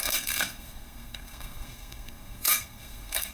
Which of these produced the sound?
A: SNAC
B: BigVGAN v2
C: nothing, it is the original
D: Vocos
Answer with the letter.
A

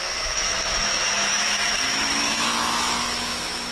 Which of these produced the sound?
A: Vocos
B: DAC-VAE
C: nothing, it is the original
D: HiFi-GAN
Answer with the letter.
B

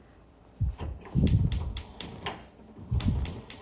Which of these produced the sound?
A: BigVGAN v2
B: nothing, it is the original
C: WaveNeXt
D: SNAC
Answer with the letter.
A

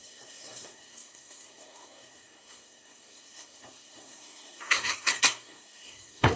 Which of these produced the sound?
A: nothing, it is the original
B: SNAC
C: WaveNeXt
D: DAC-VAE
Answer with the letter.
B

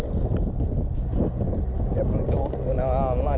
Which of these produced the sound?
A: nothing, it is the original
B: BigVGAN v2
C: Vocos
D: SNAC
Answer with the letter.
A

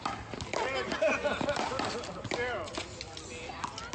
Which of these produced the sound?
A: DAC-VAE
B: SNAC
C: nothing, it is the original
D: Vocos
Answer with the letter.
C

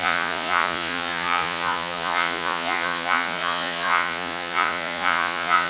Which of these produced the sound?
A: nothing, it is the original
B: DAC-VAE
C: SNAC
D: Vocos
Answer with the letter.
D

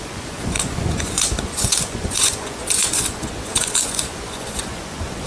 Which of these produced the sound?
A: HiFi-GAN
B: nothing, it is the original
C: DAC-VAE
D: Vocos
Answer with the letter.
D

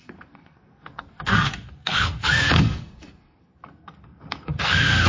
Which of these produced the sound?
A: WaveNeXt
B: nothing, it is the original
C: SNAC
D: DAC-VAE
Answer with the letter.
C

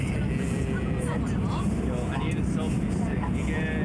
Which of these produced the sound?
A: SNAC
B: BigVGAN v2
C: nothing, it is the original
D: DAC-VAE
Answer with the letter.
C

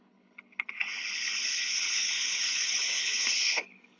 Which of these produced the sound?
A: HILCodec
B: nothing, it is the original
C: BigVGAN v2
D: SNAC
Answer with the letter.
A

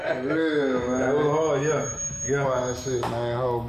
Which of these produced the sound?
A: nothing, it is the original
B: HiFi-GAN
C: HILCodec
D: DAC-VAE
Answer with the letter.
D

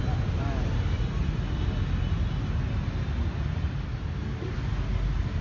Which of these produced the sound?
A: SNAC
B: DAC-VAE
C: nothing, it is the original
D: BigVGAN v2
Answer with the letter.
C